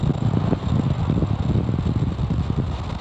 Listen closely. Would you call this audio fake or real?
real